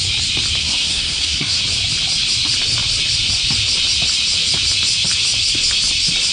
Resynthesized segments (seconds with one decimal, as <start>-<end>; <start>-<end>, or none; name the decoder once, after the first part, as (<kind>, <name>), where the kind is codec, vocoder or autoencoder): 0.6-1.6 (codec, SNAC)